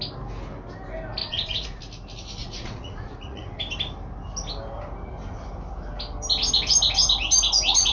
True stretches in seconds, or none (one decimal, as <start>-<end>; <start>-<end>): 0.0-1.2; 1.8-2.4; 3.6-7.9